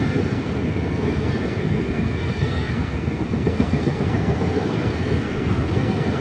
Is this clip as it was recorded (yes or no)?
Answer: no